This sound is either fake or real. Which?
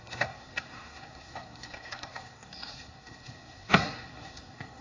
fake